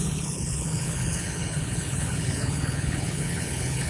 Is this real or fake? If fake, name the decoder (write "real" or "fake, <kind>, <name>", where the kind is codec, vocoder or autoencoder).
fake, codec, HILCodec